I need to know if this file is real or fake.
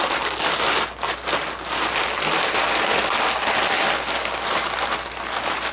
real